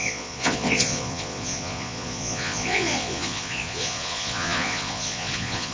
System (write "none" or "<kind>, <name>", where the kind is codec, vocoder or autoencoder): vocoder, Vocos